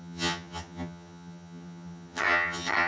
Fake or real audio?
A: fake